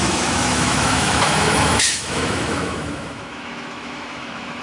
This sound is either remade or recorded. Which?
remade